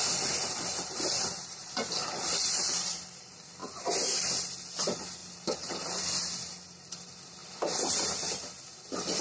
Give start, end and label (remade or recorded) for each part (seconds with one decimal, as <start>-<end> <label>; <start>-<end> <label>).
0.0-7.4 remade; 7.4-7.9 recorded; 7.9-9.2 remade